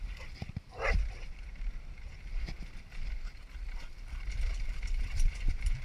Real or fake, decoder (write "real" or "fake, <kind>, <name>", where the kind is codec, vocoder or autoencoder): fake, vocoder, BigVGAN v2